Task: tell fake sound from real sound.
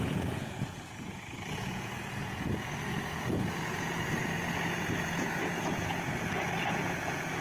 fake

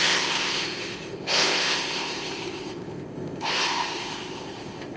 fake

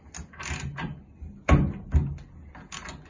real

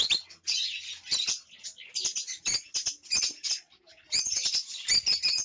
real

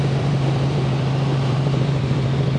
fake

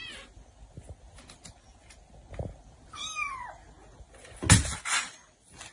real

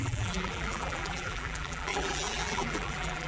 fake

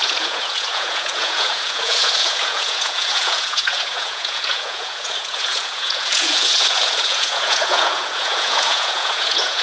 fake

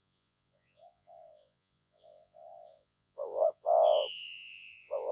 fake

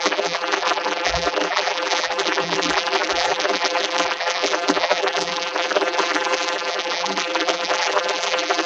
fake